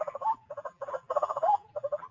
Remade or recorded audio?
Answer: remade